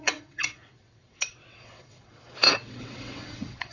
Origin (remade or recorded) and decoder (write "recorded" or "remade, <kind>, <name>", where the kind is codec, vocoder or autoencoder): remade, vocoder, WaveNeXt